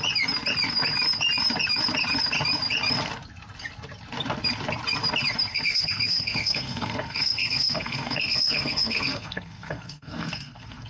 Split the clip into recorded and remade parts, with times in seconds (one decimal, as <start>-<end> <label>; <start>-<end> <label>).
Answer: 0.0-5.5 recorded; 5.5-10.9 remade